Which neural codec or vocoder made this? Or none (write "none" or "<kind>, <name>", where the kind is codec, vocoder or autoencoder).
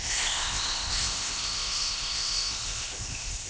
codec, ZipCodec